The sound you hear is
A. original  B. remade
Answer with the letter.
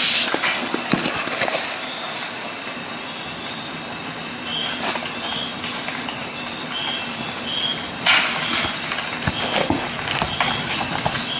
A